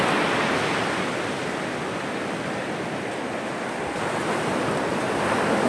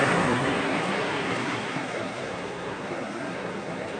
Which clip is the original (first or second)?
first